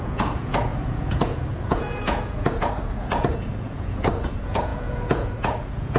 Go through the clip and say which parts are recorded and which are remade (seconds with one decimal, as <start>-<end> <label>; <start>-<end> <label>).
0.0-6.0 remade